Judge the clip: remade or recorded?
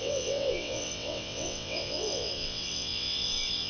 remade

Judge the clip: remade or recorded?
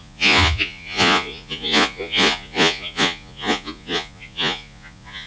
remade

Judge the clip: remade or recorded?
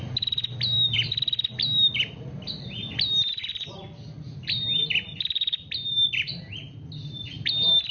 recorded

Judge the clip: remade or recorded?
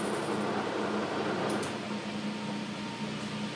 recorded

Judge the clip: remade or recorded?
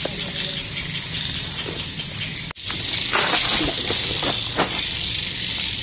recorded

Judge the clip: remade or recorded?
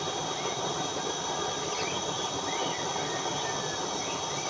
recorded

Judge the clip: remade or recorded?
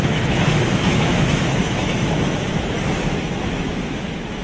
remade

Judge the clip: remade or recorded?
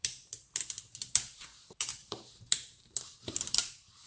remade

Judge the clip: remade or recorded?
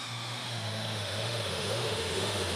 remade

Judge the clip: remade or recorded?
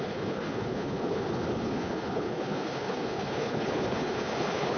remade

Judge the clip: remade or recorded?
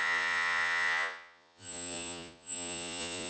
remade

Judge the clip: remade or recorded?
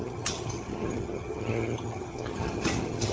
remade